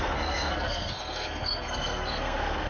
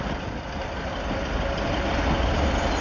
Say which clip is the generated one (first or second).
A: first